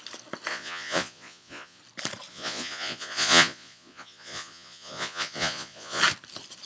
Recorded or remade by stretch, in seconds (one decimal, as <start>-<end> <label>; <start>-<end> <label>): 0.0-0.5 recorded; 0.5-1.8 remade; 1.8-2.3 recorded; 2.3-6.0 remade; 6.0-6.7 recorded

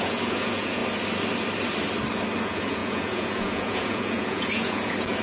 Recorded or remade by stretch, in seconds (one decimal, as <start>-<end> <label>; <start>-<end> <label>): 0.0-0.8 remade; 0.8-2.4 recorded; 2.4-5.2 remade

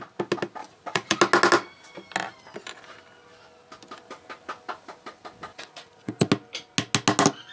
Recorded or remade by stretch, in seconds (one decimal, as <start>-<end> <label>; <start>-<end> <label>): 0.0-0.6 recorded; 0.6-1.2 remade; 1.2-5.5 recorded; 5.5-6.3 remade; 6.3-7.5 recorded